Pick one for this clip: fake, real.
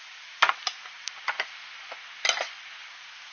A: real